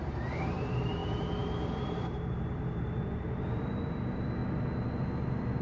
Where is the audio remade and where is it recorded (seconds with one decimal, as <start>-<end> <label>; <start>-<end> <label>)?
0.0-4.4 remade; 4.4-5.6 recorded